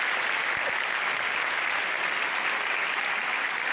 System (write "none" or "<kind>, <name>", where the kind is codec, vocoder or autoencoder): none